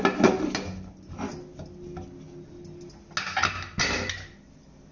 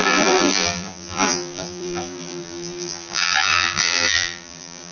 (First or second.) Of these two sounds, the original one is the first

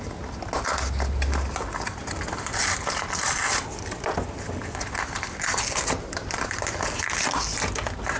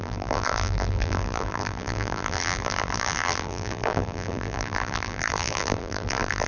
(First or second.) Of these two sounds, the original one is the first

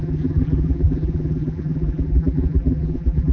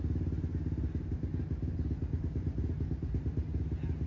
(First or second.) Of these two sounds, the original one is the second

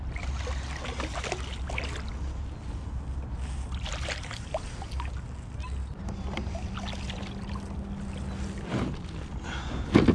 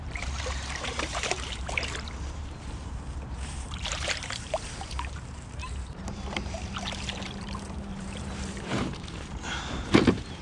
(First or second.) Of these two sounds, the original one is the first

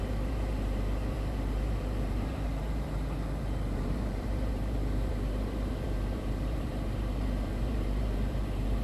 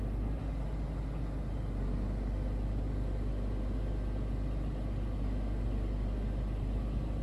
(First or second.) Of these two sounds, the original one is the second